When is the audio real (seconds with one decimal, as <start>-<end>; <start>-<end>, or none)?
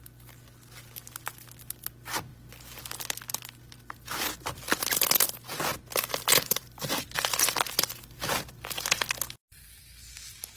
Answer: 0.0-10.6